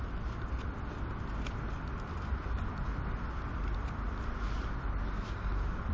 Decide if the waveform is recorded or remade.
recorded